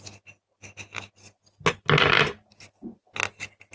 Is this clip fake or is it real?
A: real